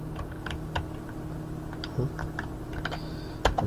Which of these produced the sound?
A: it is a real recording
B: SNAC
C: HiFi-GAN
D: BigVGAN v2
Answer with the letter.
A